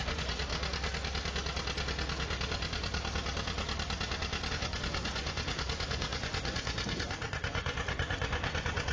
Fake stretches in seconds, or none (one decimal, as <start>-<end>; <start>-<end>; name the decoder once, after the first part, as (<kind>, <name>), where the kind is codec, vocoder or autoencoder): 0.0-0.5 (vocoder, Vocos); 4.5-8.9